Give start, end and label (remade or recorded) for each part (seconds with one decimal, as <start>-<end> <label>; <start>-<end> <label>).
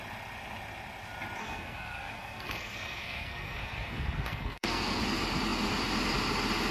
0.0-1.4 recorded; 1.4-5.0 remade; 5.0-6.7 recorded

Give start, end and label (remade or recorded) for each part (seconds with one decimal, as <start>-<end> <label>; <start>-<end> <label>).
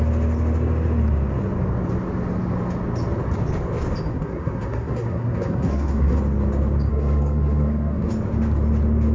0.0-4.1 recorded; 4.1-6.2 remade; 6.2-6.9 recorded; 6.9-8.1 remade; 8.1-9.1 recorded